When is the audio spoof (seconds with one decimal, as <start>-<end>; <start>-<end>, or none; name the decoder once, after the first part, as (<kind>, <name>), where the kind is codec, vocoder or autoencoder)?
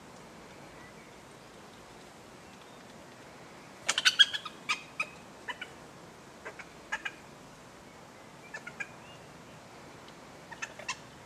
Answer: none